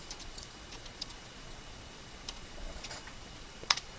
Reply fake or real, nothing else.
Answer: fake